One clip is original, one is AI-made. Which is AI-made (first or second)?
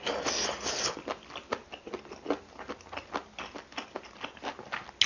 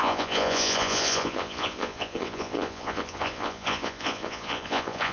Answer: second